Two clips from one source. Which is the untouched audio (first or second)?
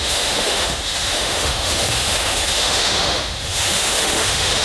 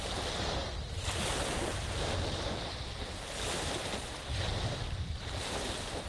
second